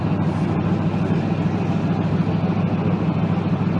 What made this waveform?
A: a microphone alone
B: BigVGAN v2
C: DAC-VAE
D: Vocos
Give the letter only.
A